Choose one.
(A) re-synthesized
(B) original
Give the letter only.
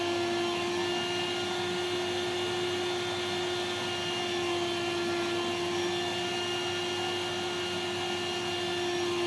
B